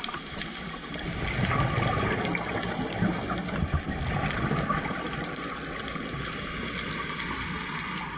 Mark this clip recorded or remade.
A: recorded